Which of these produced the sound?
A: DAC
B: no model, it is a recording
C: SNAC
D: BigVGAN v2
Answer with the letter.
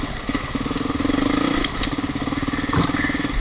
B